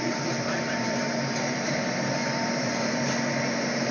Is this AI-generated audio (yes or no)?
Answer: yes